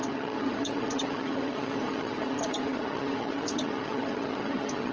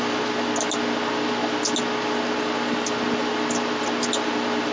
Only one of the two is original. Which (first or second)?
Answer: second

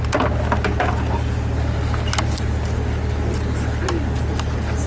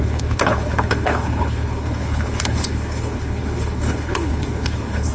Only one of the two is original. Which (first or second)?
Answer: first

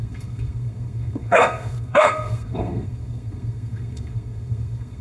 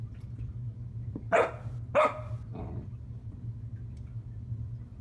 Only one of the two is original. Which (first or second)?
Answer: second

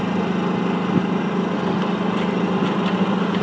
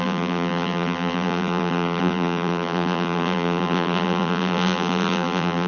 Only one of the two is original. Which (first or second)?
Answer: first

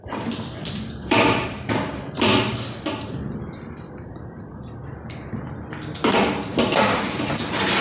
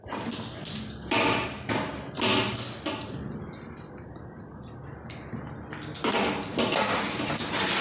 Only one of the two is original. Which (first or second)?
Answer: second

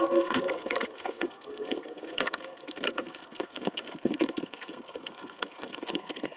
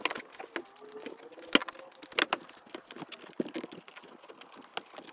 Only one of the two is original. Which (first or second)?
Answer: second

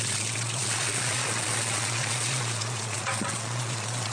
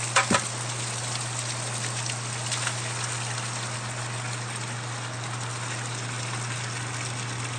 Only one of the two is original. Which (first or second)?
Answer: second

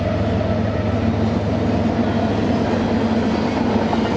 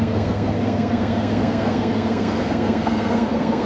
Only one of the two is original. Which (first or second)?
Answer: first